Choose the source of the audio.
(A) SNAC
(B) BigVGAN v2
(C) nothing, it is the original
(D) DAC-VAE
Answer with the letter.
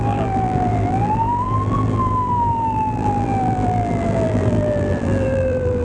B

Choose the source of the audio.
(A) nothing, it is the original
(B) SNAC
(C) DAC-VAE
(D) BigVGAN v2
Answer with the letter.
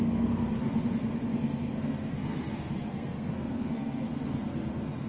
B